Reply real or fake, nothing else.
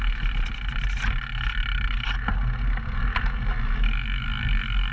real